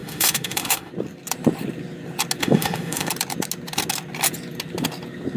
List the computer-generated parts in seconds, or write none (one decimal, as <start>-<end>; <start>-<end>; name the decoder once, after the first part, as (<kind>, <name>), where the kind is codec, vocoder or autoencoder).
0.0-0.9 (autoencoder, DAC-VAE); 2.4-3.1